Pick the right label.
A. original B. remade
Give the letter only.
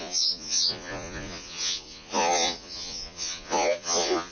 B